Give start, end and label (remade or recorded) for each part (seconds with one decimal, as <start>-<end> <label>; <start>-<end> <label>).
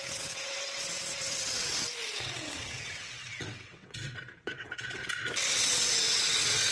0.0-1.7 remade; 1.7-2.2 recorded; 2.2-5.0 remade; 5.0-5.5 recorded; 5.5-6.7 remade